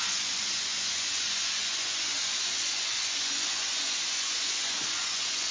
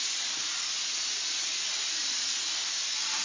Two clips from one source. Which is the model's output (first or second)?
first